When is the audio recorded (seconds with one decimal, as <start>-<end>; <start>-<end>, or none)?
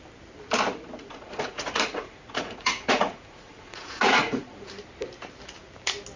0.0-1.0; 4.7-6.2